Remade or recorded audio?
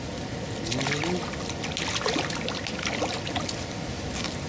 recorded